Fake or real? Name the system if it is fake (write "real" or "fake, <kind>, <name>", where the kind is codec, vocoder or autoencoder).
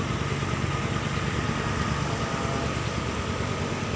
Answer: real